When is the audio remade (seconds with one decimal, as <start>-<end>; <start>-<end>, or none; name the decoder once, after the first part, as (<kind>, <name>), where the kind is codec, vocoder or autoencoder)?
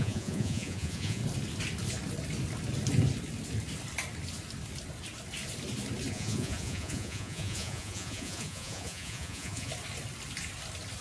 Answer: 0.0-1.2 (vocoder, Vocos); 6.1-9.7